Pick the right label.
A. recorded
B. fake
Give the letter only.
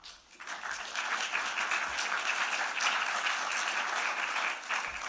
A